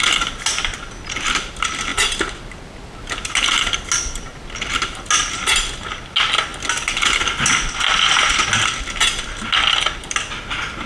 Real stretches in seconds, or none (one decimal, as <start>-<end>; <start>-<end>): 0.0-10.9